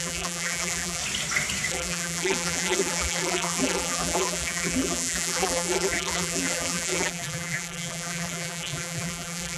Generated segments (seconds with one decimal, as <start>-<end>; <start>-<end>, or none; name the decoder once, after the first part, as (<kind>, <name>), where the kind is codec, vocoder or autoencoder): 0.0-1.0 (vocoder, BigVGAN v2); 1.7-9.6